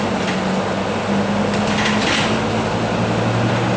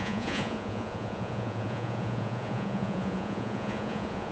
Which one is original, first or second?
first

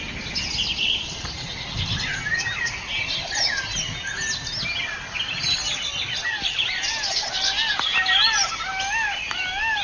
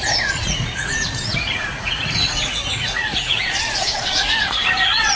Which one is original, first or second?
first